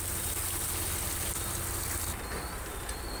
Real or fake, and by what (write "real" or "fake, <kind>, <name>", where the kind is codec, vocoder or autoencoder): real